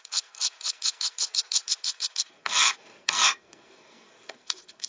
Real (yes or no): no